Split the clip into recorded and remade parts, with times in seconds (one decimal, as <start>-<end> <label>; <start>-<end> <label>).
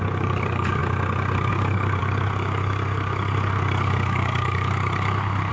0.0-0.8 remade; 0.8-1.5 recorded; 1.5-5.5 remade